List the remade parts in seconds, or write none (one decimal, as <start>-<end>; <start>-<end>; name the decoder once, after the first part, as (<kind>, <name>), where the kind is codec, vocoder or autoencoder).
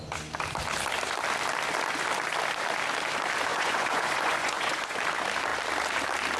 3.5-5.0 (vocoder, Vocos)